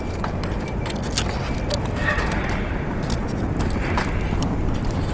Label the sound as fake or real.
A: real